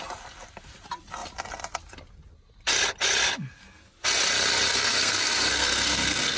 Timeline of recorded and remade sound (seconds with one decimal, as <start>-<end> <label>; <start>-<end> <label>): 0.0-4.7 recorded; 4.7-6.4 remade